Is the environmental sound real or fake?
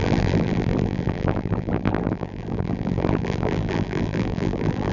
fake